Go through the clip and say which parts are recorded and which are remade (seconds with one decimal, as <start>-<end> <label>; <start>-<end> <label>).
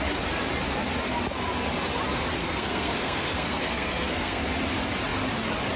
0.0-2.4 recorded; 2.4-4.4 remade; 4.4-5.8 recorded